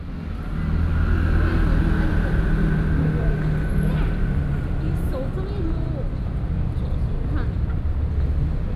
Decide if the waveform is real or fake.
real